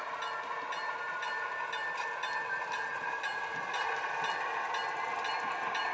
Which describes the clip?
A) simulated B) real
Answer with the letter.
B